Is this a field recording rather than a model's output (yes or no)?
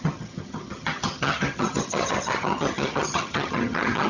no